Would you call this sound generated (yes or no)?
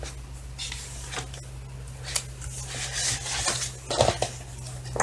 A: no